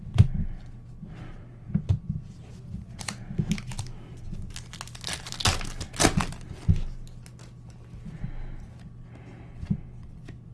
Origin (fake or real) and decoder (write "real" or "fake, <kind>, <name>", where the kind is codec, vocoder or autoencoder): real